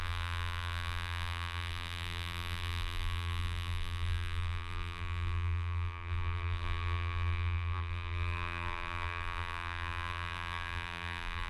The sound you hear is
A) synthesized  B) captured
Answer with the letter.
A